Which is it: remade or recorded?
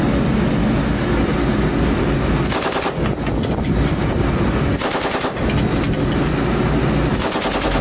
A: recorded